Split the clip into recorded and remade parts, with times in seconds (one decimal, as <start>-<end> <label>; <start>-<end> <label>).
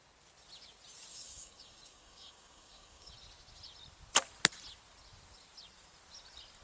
0.0-1.1 recorded; 1.1-3.1 remade; 3.1-6.6 recorded